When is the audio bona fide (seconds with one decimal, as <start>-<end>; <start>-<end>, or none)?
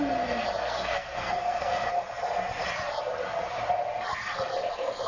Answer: 0.0-0.6; 1.9-5.1